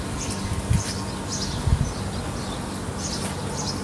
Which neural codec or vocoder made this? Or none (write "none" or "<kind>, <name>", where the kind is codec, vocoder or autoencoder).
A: none